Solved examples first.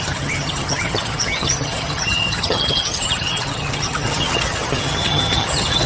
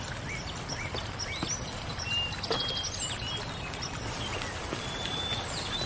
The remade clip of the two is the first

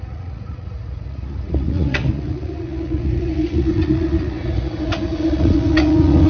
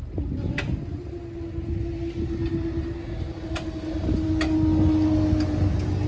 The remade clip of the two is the first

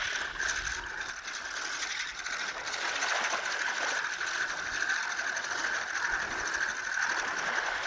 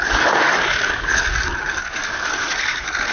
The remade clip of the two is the second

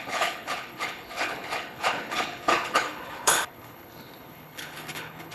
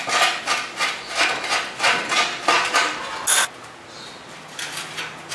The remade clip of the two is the first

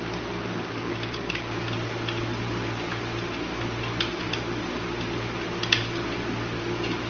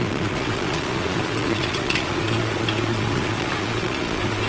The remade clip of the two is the second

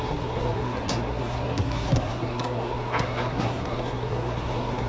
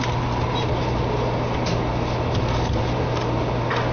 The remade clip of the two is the first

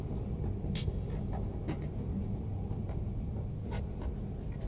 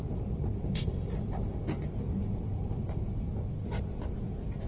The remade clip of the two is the second